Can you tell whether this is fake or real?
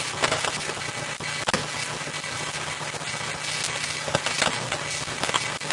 real